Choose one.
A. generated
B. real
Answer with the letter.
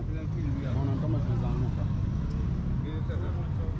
B